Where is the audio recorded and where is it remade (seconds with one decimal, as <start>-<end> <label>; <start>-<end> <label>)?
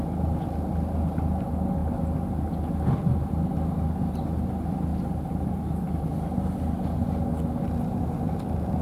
0.0-4.9 recorded; 4.9-6.3 remade; 6.3-8.8 recorded